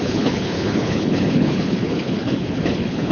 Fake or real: fake